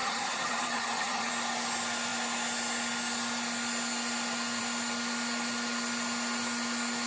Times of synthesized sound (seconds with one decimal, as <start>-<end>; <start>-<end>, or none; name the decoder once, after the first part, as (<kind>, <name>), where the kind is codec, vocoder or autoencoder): 0.0-1.3 (vocoder, HiFi-GAN)